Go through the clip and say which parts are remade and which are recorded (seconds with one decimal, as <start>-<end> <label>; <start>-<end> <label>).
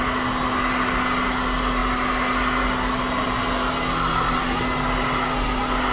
0.0-5.9 recorded